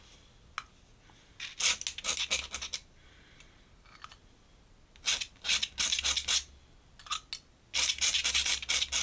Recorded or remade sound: recorded